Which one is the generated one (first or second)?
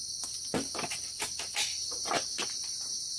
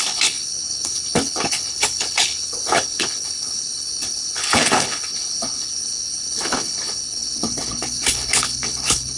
second